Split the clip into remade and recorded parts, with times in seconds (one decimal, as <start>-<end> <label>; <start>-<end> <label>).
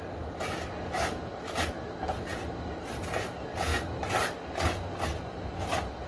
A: 0.0-6.1 recorded